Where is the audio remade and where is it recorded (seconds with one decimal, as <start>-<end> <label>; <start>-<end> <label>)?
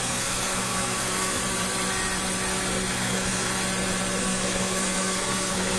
0.0-1.4 remade; 1.4-2.9 recorded; 2.9-3.5 remade; 3.5-4.2 recorded; 4.2-5.8 remade